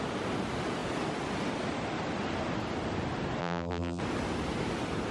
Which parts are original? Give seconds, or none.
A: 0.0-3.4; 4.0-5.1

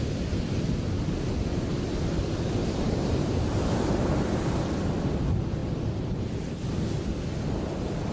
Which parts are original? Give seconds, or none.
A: 0.0-2.6; 3.9-8.1